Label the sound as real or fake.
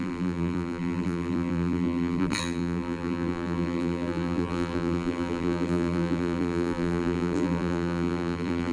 fake